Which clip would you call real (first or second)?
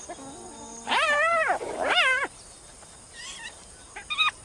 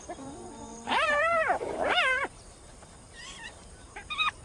first